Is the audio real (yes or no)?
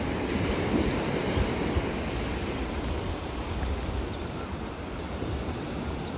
yes